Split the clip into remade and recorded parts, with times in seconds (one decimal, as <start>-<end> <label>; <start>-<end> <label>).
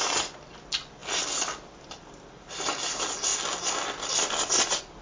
0.0-5.0 recorded